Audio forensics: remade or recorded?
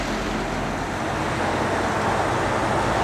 recorded